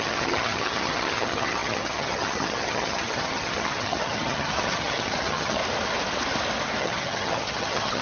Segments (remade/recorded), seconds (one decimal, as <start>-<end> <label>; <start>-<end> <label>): 0.0-5.6 remade; 5.6-6.8 recorded; 6.8-8.0 remade